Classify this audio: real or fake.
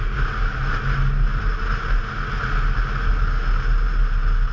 real